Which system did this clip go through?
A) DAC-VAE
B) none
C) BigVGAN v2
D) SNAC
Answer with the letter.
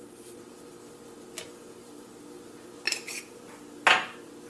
B